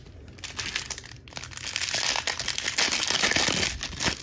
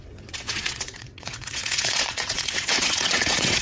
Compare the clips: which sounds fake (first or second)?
second